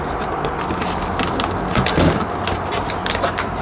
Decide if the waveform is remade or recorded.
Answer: recorded